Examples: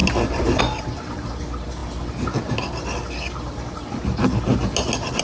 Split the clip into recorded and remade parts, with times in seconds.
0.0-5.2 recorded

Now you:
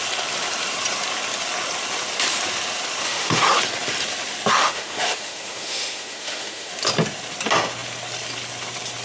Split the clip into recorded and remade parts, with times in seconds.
0.0-3.0 recorded; 3.0-3.5 remade; 3.5-4.6 recorded; 4.6-6.7 remade; 6.7-9.0 recorded

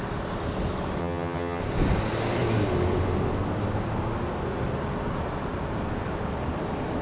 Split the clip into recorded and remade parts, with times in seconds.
0.0-1.0 recorded; 1.0-1.6 remade; 1.6-7.0 recorded